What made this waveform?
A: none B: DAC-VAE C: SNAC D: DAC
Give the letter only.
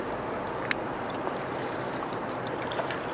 A